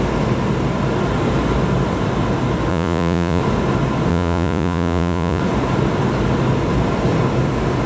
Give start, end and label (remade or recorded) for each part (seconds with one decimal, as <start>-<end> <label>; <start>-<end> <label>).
0.0-2.7 recorded; 2.7-3.4 remade; 3.4-4.1 recorded; 4.1-5.4 remade; 5.4-7.9 recorded

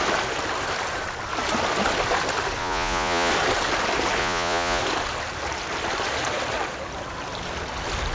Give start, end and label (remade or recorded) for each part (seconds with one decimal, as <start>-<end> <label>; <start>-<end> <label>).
0.0-2.6 recorded; 2.6-3.3 remade; 3.3-4.2 recorded; 4.2-4.8 remade; 4.8-8.1 recorded

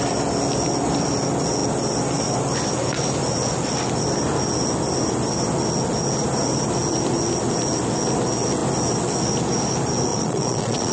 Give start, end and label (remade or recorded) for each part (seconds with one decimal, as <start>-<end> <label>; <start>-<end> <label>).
0.0-10.1 recorded; 10.1-10.9 remade

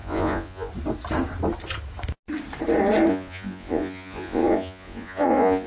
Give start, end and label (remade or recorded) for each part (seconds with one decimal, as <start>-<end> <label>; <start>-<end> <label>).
0.0-0.7 remade; 0.7-3.1 recorded; 3.1-5.7 remade

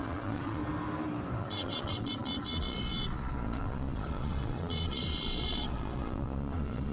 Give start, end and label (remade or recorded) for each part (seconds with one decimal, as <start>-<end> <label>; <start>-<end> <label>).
0.0-0.6 remade; 0.6-1.4 recorded; 1.4-6.9 remade

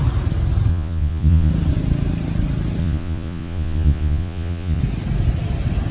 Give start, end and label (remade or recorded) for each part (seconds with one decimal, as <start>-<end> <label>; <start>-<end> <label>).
0.0-0.7 recorded; 0.7-1.5 remade; 1.5-2.8 recorded; 2.8-4.8 remade; 4.8-5.9 recorded

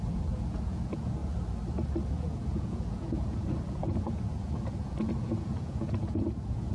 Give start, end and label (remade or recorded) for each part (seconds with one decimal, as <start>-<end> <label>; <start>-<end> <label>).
0.0-1.2 remade; 1.2-2.1 recorded; 2.1-6.7 remade

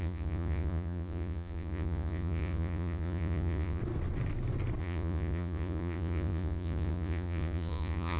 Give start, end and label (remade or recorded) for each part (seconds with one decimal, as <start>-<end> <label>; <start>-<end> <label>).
0.0-3.8 remade; 3.8-4.8 recorded; 4.8-8.2 remade